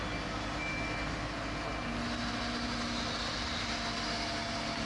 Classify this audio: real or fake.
real